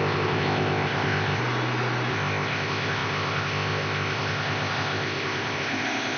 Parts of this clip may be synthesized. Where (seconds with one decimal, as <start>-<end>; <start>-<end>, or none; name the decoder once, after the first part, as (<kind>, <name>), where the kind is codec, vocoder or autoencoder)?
0.0-1.4 (codec, ZipCodec); 2.1-6.2